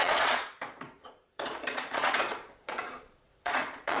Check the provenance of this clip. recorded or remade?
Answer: remade